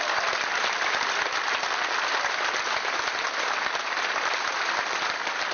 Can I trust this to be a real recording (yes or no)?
yes